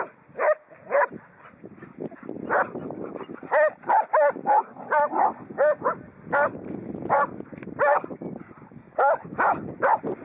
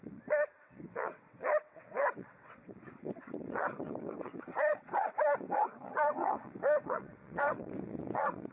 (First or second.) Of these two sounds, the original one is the first